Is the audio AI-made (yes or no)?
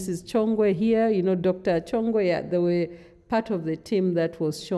no